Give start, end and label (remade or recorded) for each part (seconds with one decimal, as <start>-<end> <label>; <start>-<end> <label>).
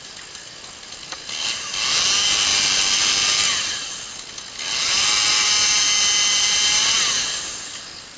0.0-8.2 recorded